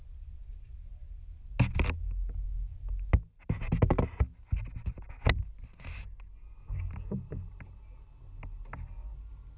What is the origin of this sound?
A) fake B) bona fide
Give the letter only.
B